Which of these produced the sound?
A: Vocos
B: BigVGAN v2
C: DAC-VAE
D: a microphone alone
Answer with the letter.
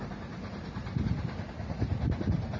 B